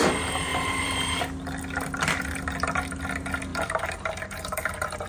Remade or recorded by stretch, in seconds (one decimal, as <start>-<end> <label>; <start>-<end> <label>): 0.0-0.5 recorded; 0.5-1.2 remade; 1.2-3.5 recorded; 3.5-5.1 remade